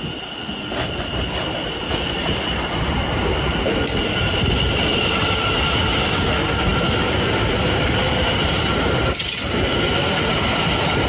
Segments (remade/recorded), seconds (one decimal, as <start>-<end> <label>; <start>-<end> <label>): 0.0-11.1 recorded